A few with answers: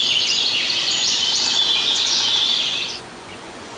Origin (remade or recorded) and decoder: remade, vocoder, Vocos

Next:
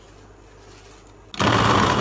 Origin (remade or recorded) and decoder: recorded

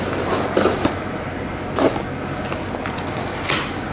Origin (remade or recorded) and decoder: recorded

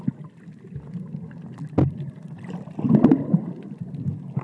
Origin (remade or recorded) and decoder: recorded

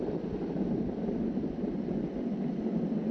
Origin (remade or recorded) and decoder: recorded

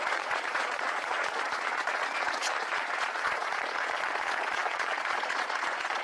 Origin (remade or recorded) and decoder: remade, vocoder, Vocos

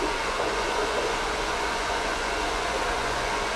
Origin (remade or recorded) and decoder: remade, vocoder, Vocos